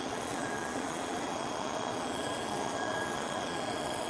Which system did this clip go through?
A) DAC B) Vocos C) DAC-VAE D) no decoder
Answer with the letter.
B